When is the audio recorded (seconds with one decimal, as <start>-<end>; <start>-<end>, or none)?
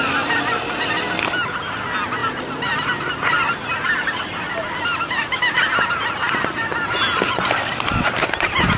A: 0.0-8.8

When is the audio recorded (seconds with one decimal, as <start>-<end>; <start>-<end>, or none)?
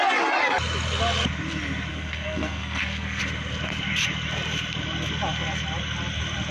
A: 0.0-1.9; 3.2-6.5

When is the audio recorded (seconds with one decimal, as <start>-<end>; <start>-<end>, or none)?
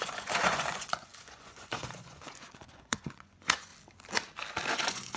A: 3.7-4.7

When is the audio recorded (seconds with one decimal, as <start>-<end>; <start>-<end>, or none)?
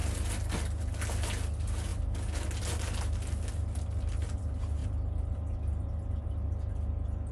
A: 0.0-7.3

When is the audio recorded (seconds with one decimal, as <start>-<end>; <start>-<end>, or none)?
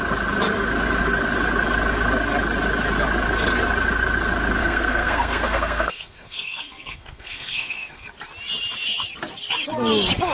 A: 0.0-4.6; 8.1-10.3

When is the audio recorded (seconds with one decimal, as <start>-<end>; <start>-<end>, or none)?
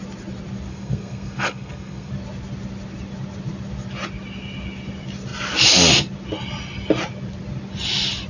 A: 0.0-0.7; 2.1-8.3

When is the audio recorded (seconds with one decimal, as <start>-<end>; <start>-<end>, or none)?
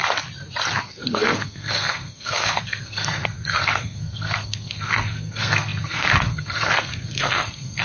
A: 0.0-0.7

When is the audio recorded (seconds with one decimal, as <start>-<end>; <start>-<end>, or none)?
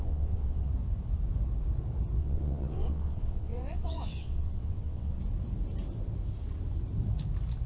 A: 0.7-2.2; 5.2-7.7